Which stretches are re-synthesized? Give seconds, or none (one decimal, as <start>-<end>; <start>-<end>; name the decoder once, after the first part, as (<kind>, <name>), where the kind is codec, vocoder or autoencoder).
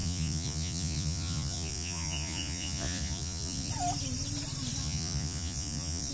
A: 0.0-3.7 (vocoder, Vocos); 4.8-6.1